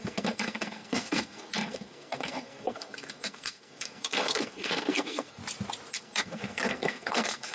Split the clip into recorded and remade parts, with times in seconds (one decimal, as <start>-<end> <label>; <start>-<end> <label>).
0.0-5.4 remade; 5.4-5.9 recorded; 5.9-7.5 remade